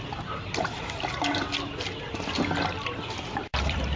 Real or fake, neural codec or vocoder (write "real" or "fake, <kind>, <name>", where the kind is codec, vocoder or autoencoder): fake, vocoder, BigVGAN v2